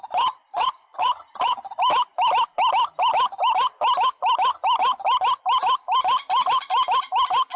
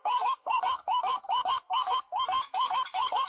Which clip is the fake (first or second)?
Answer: second